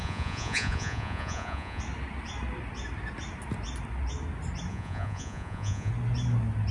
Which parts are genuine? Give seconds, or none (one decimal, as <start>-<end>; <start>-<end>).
1.8-4.7; 5.9-6.7